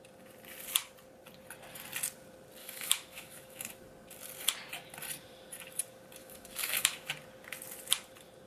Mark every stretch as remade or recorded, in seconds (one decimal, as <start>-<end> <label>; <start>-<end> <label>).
0.0-2.6 recorded; 2.6-3.7 remade; 3.7-6.2 recorded; 6.2-7.1 remade; 7.1-8.5 recorded